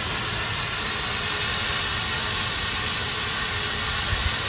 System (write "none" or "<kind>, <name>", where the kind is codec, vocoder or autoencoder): none